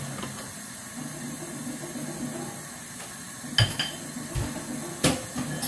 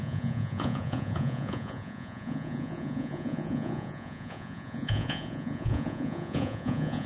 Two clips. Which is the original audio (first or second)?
first